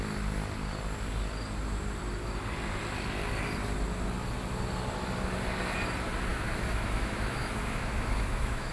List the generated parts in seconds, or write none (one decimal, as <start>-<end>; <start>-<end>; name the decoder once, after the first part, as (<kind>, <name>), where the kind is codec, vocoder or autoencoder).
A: 6.3-8.7 (autoencoder, DAC-VAE)